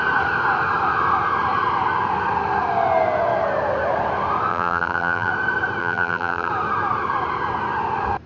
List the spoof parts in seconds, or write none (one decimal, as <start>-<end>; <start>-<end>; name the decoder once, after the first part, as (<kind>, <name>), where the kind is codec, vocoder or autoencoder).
4.5-5.3 (vocoder, BigVGAN v2); 5.8-6.5